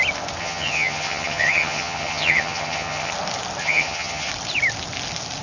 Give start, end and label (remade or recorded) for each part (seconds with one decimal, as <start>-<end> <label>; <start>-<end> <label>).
0.0-0.4 recorded; 0.4-3.1 remade; 3.1-3.6 recorded; 3.6-4.3 remade; 4.3-5.4 recorded